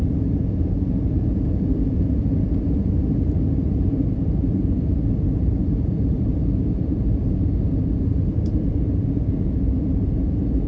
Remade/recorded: remade